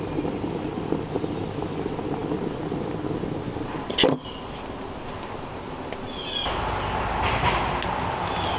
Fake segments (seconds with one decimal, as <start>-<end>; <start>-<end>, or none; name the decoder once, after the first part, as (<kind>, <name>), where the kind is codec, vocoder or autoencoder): none